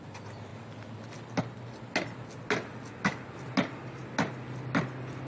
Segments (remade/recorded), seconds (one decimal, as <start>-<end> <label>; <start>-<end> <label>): 0.0-5.3 recorded